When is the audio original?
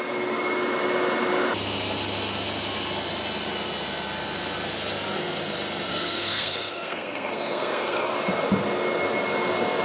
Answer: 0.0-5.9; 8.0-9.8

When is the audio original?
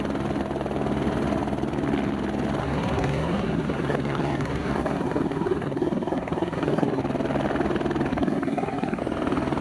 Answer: 0.0-2.6; 7.0-8.1; 9.0-9.6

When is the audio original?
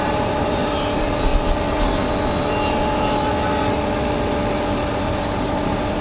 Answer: 1.3-4.9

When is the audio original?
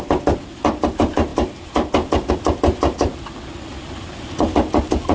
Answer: 0.0-5.1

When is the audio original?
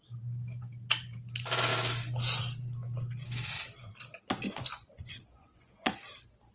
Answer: 0.0-4.8; 5.9-6.5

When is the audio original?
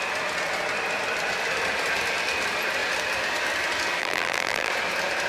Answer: 0.0-4.0; 4.7-5.3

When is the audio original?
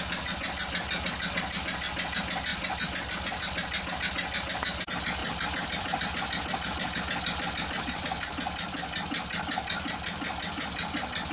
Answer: 0.0-2.5; 3.9-5.2; 6.0-11.3